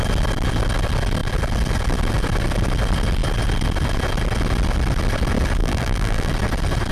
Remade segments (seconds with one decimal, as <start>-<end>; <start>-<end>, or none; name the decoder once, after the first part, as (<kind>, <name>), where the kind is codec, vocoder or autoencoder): 5.6-6.3 (vocoder, BigVGAN v2)